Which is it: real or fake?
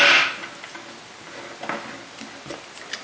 real